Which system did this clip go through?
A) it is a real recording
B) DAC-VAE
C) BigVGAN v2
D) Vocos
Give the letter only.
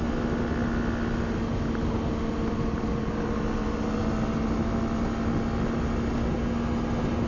A